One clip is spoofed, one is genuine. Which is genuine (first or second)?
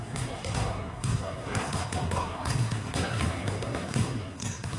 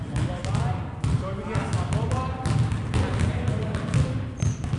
second